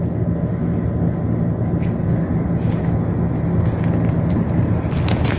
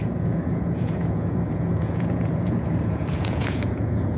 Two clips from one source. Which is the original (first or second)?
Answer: first